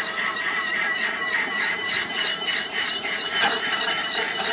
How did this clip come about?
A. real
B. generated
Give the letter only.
B